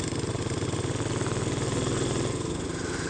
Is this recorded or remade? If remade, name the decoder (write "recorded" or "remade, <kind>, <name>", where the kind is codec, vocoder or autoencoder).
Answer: recorded